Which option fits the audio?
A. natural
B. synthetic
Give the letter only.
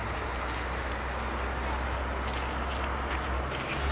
A